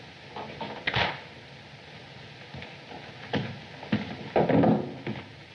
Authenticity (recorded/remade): recorded